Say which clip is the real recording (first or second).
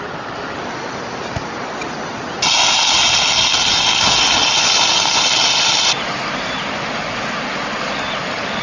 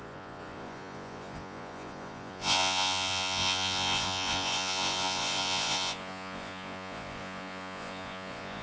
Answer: first